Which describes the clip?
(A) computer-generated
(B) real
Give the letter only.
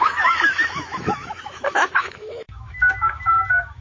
A